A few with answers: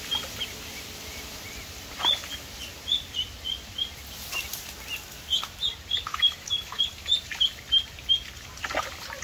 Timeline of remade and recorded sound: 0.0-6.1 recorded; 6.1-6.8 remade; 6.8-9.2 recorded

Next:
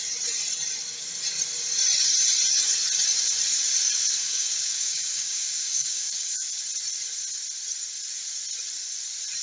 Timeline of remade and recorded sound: 0.0-4.2 recorded; 4.2-6.6 remade; 6.6-9.4 recorded

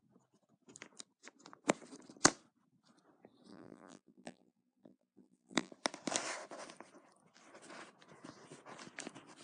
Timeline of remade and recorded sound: 0.0-3.5 recorded; 3.5-5.7 remade; 5.7-9.4 recorded

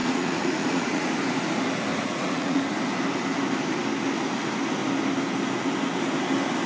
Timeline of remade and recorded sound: 0.0-1.1 remade; 1.1-1.9 recorded; 1.9-2.6 remade; 2.6-6.7 recorded

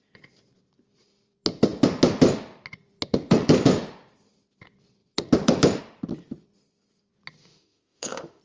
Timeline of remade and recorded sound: 0.0-7.4 recorded; 7.4-8.4 remade

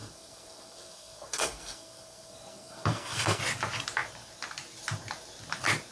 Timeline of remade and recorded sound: 0.0-3.4 remade; 3.4-5.9 recorded